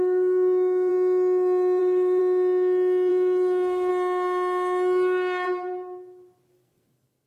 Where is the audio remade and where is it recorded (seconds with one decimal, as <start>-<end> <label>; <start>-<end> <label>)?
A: 0.0-0.9 remade; 0.9-1.8 recorded; 1.8-2.2 remade; 2.2-3.1 recorded; 3.1-3.9 remade; 3.9-6.5 recorded; 6.5-7.3 remade